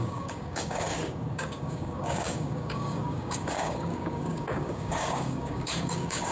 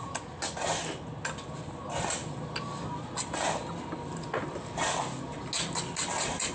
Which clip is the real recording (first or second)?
second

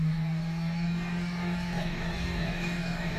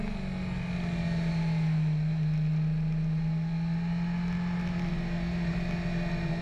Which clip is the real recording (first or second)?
second